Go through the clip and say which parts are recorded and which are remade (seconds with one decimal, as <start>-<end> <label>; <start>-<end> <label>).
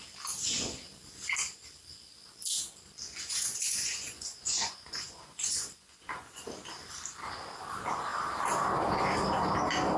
0.0-3.1 recorded; 3.1-6.4 remade; 6.4-10.0 recorded